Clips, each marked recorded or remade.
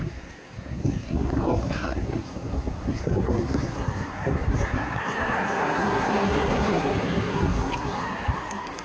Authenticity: remade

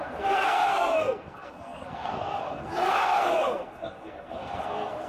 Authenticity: remade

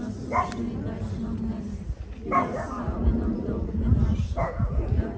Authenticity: recorded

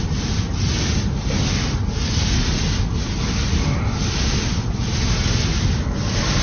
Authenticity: recorded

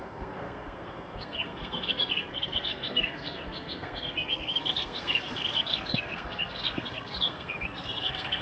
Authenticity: remade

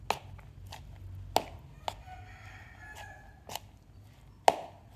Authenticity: recorded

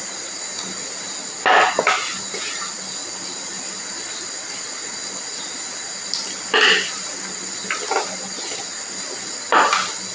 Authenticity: recorded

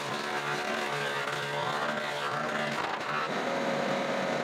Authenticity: recorded